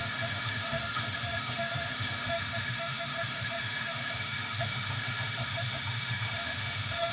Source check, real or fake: fake